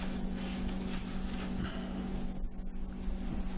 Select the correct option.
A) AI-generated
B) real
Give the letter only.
B